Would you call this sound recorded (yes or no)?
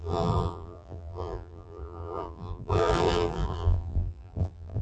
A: no